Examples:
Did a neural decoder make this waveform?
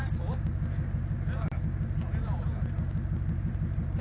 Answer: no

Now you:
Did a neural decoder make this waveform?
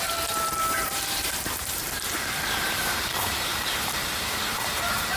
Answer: yes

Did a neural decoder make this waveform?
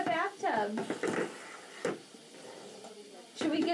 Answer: no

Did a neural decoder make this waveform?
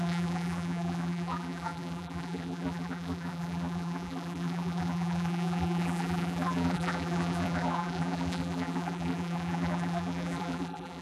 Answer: yes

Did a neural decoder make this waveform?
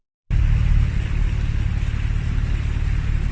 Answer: yes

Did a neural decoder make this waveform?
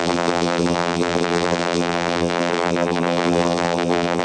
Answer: yes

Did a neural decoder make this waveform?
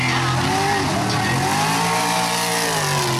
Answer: no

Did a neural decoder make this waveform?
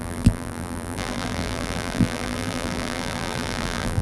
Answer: yes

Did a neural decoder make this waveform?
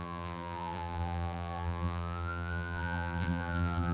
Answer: yes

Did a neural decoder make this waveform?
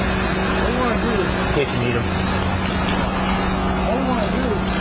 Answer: no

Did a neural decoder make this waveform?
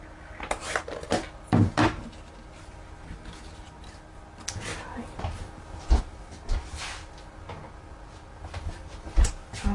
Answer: no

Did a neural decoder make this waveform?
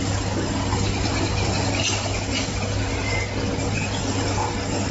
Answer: no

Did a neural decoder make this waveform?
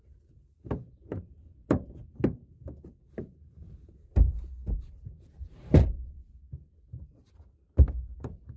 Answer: yes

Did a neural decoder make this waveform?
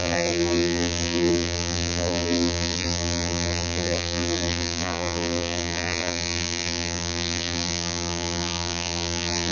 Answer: yes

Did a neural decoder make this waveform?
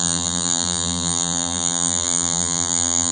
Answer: yes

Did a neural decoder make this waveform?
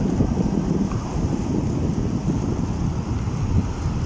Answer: yes